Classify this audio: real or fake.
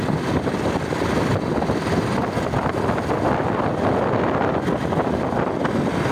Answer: real